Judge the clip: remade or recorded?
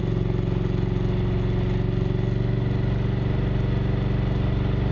recorded